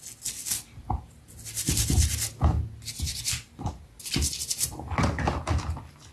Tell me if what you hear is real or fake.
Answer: real